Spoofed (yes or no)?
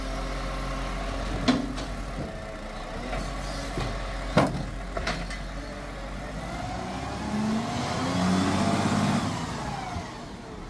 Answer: no